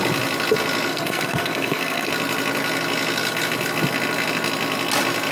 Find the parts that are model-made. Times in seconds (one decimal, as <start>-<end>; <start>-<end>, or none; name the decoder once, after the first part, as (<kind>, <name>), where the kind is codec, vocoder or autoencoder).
0.9-2.1 (codec, SNAC)